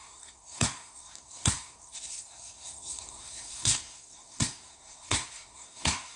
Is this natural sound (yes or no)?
no